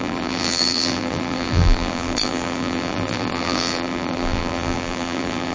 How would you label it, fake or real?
fake